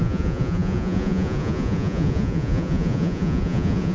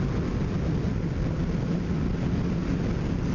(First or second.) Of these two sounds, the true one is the second